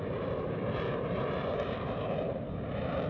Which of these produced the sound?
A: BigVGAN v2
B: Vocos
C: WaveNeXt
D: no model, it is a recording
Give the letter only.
A